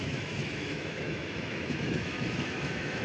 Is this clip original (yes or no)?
no